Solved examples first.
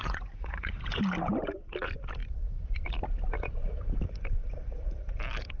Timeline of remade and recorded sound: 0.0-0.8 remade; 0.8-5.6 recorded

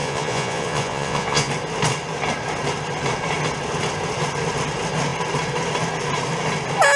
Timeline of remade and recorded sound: 0.0-1.5 remade; 1.5-7.0 recorded

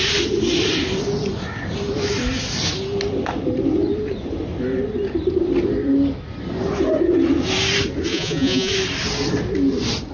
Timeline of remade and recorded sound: 0.0-8.1 recorded; 8.1-8.7 remade; 8.7-10.1 recorded

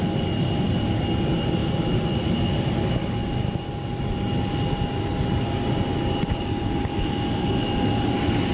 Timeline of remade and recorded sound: 0.0-8.5 recorded

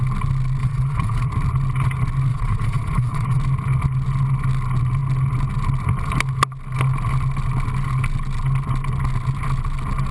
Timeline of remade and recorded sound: 0.0-0.6 recorded; 0.6-1.3 remade; 1.3-2.3 recorded; 2.3-3.4 remade; 3.4-10.1 recorded

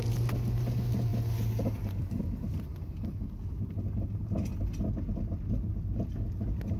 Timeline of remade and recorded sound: 0.0-6.8 recorded

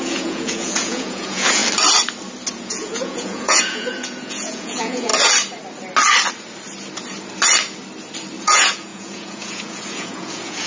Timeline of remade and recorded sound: 0.0-1.6 remade; 1.6-2.5 recorded; 2.5-5.1 remade; 5.1-8.4 recorded; 8.4-10.7 remade